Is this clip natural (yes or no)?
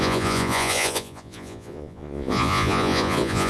no